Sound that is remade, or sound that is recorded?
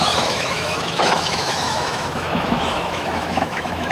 remade